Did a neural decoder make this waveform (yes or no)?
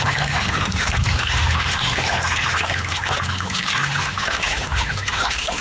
yes